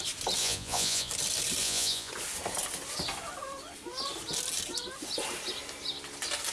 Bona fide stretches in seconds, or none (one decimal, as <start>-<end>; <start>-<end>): 0.0-0.4; 1.1-1.6; 2.1-6.5